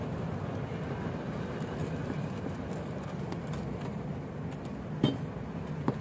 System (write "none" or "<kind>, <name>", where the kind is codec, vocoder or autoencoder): none